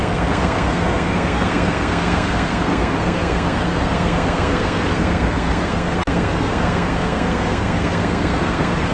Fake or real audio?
fake